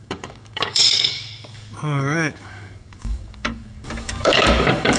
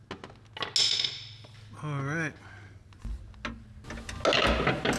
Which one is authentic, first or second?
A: second